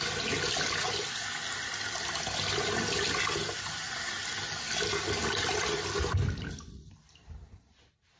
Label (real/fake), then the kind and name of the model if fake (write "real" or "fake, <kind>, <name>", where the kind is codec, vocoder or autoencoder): real